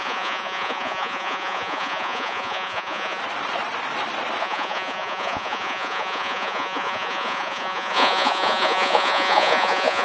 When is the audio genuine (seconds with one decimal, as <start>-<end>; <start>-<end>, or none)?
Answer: 3.2-4.4

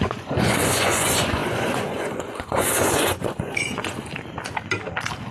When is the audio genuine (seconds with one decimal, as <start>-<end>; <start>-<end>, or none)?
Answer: 4.1-5.3